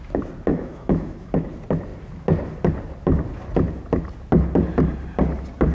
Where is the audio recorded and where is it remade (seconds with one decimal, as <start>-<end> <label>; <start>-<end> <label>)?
0.0-0.5 recorded; 0.5-1.5 remade; 1.5-5.7 recorded